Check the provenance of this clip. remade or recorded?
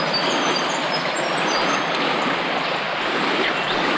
recorded